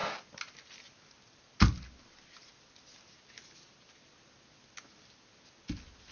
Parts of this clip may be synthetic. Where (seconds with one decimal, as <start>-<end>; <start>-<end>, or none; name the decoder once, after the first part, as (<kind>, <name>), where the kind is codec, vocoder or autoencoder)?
none